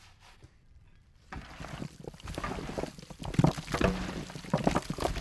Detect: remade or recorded recorded